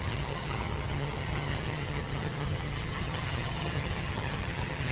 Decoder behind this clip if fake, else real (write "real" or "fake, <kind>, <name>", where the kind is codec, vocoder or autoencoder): fake, vocoder, HiFi-GAN